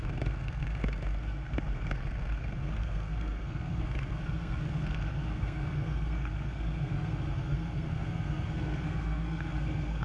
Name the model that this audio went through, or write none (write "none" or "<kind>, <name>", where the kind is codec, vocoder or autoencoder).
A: codec, SNAC